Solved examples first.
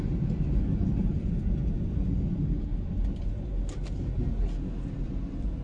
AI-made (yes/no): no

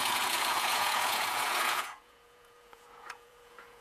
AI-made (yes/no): yes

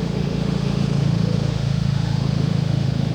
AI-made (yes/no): yes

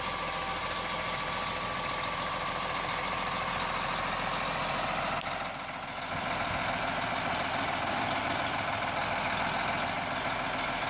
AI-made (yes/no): no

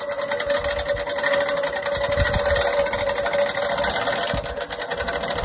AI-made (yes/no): no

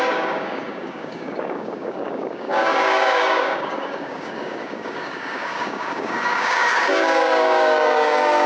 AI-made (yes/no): yes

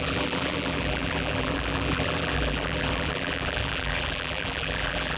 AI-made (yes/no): yes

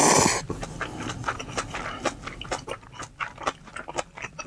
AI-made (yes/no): no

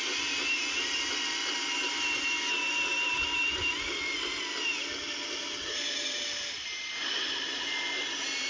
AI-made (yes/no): no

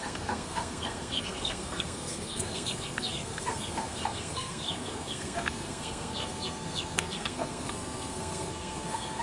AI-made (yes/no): yes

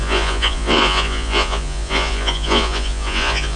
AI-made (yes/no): yes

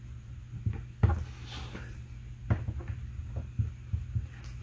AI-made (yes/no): no